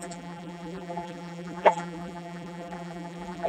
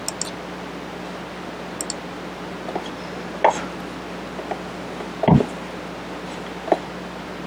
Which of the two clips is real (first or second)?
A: second